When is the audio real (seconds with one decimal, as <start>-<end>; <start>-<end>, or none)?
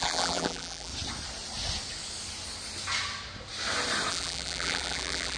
0.9-4.1